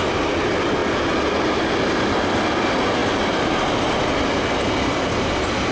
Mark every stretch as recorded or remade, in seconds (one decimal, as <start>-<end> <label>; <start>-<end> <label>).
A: 0.0-5.7 recorded